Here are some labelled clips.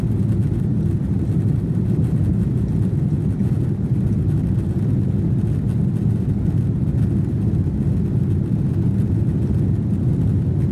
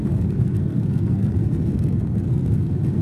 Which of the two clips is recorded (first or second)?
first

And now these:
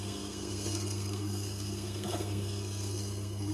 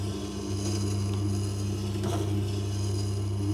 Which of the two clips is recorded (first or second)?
second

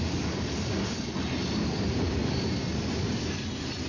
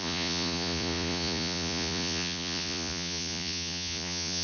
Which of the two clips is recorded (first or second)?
first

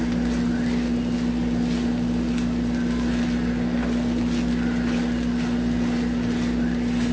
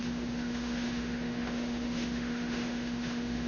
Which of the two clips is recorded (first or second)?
first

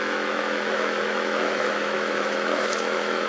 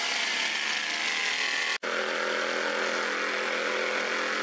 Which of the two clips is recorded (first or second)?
second